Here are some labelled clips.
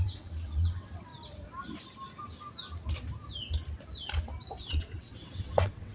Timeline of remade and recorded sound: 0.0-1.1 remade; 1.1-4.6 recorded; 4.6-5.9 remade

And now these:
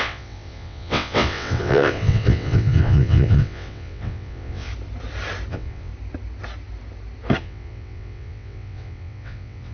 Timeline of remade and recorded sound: 0.0-4.7 remade; 4.7-5.5 recorded; 5.5-5.9 remade; 5.9-7.4 recorded; 7.4-9.7 remade

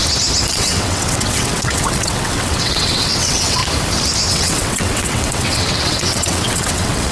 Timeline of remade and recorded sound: 0.0-0.5 recorded; 0.5-3.6 remade; 3.6-4.3 recorded; 4.3-7.1 remade

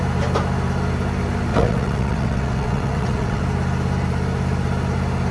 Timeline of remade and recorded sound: 0.0-1.5 recorded; 1.5-3.4 remade; 3.4-5.3 recorded

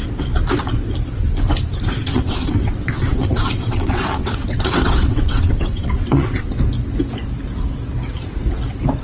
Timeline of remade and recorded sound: 0.0-2.0 recorded; 2.0-6.5 remade; 6.5-9.0 recorded